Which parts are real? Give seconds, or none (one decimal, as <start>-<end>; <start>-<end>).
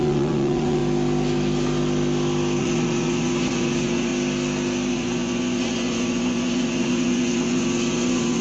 0.8-2.6; 4.1-4.9